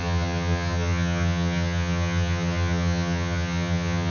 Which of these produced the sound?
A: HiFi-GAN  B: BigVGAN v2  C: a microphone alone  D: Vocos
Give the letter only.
A